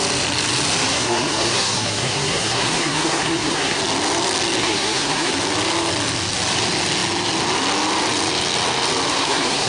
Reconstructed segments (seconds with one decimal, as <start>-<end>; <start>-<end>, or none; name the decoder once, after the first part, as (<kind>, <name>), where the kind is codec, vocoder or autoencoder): 0.9-3.8 (codec, SNAC); 4.6-5.3; 9.1-9.7